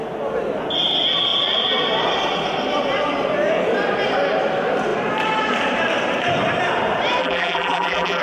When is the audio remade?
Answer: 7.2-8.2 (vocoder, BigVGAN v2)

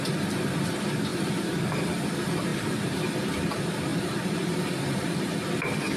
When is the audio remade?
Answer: 1.1-2.0 (vocoder, BigVGAN v2); 2.5-3.2; 3.9-5.3

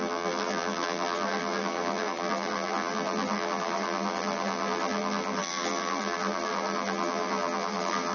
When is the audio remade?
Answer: 0.0-8.1 (vocoder, BigVGAN v2)